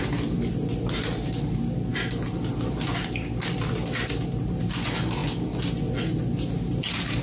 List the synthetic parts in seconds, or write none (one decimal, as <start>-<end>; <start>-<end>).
none